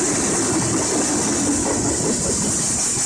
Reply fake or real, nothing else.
real